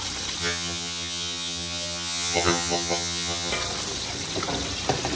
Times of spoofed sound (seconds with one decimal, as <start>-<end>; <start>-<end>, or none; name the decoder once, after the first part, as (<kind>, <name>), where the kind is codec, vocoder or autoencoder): 0.4-3.5 (vocoder, HiFi-GAN)